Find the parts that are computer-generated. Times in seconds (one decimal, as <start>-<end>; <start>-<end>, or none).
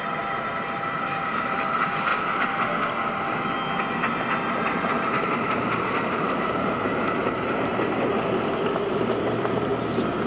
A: 0.0-2.1; 4.5-7.7; 9.0-9.7